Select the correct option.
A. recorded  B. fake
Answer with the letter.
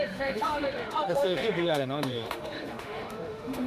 B